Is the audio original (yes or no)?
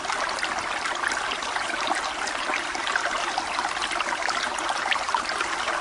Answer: yes